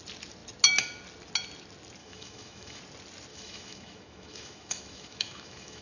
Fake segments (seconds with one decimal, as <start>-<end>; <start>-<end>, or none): 2.0-2.8; 3.3-5.8